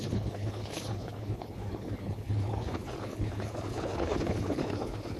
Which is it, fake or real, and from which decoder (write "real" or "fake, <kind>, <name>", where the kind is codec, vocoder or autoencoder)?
fake, codec, HILCodec